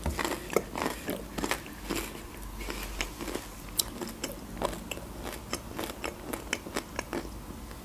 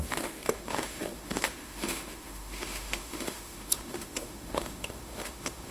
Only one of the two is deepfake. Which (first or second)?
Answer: second